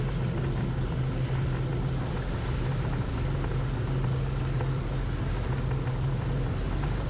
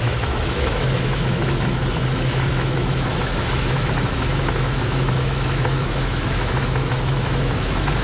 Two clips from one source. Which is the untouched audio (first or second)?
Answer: first